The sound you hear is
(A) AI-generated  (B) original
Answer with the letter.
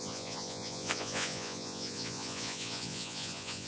A